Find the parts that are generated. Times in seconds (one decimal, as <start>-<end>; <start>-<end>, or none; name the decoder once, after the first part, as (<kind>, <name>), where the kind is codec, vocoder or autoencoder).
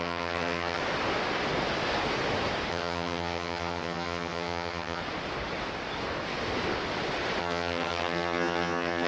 0.0-0.8 (vocoder, HiFi-GAN); 2.7-5.0; 7.4-9.1